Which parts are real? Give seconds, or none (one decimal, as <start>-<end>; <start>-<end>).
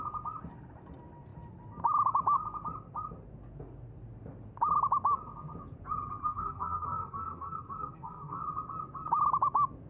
0.0-6.2; 8.4-9.9